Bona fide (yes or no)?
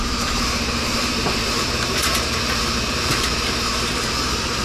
no